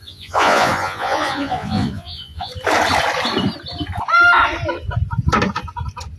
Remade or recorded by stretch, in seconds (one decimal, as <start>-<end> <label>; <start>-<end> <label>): 0.0-2.5 remade; 2.5-6.2 recorded